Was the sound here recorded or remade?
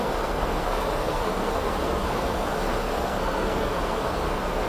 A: remade